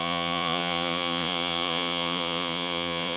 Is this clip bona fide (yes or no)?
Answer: no